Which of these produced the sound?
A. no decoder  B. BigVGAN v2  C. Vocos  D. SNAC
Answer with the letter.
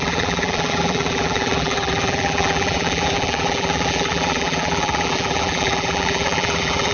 B